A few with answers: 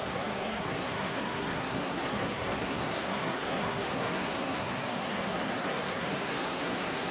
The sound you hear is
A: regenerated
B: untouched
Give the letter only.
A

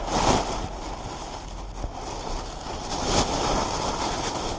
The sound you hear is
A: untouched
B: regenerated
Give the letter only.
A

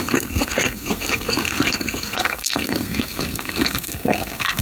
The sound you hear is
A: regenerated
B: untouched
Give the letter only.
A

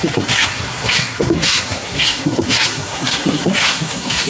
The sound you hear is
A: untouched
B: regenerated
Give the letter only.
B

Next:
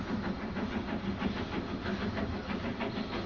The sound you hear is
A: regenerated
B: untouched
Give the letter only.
B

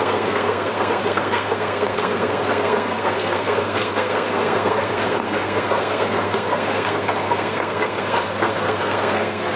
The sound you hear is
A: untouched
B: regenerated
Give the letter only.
B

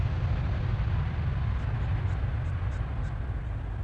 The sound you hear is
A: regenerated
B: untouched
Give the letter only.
B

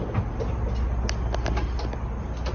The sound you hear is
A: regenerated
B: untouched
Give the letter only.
B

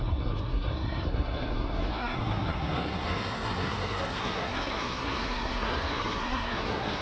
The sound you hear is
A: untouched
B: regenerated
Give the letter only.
B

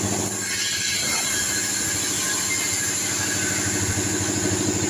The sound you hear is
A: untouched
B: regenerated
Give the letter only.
A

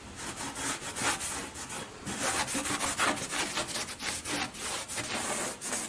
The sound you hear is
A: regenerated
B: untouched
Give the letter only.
B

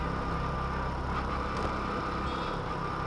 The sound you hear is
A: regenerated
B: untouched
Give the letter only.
B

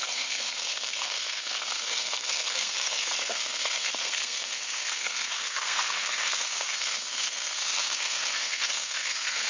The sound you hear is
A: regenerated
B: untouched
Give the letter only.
A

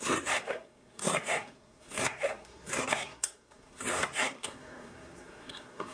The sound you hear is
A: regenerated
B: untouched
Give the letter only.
A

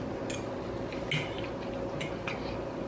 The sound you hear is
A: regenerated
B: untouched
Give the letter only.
B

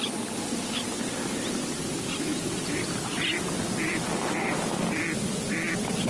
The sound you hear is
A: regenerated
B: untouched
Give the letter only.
B